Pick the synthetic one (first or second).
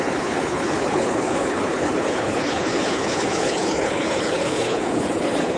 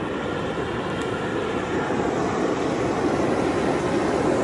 first